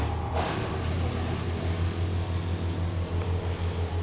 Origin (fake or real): real